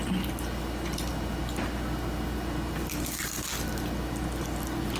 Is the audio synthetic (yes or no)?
no